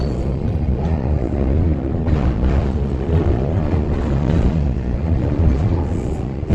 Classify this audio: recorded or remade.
remade